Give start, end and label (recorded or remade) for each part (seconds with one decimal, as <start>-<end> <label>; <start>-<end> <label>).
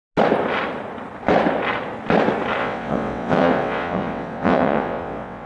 0.0-2.6 recorded; 2.6-5.5 remade